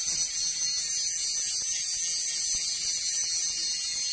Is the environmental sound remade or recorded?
recorded